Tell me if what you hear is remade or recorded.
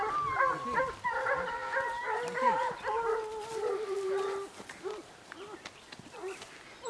recorded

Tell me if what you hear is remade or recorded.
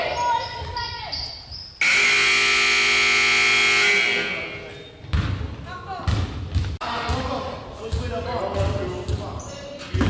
recorded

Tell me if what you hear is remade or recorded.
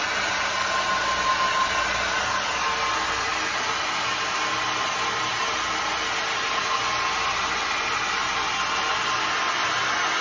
recorded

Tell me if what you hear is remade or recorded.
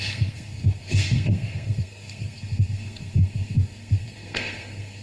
remade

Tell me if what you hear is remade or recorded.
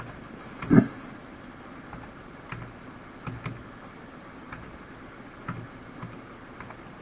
recorded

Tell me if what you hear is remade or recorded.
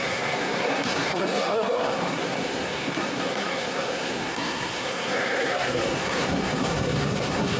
remade